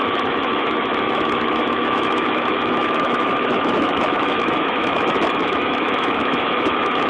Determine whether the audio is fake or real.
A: fake